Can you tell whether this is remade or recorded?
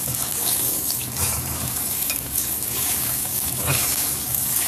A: remade